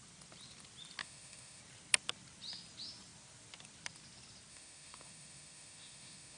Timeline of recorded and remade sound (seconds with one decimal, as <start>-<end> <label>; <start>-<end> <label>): 0.0-1.0 recorded; 1.0-1.6 remade; 1.6-4.5 recorded; 4.5-6.4 remade